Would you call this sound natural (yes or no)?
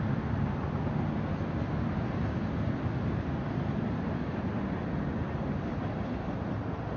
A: yes